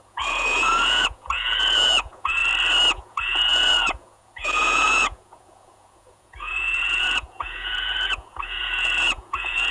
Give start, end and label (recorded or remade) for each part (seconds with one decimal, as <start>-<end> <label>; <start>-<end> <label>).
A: 0.0-2.4 remade; 2.4-2.9 recorded; 2.9-9.7 remade